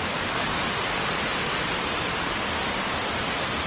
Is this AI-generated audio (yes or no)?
no